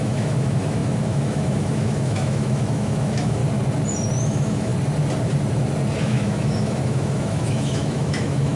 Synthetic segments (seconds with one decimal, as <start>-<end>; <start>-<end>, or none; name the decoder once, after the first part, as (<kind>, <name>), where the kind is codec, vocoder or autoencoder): 0.0-3.4 (autoencoder, DAC-VAE); 4.2-4.7; 6.0-8.6